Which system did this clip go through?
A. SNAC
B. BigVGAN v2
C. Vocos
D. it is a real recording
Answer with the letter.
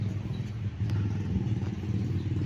D